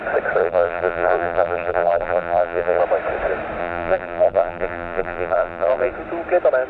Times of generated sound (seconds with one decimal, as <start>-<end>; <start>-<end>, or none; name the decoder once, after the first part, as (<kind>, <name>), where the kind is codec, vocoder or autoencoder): 0.4-2.8 (vocoder, BigVGAN v2); 3.6-5.9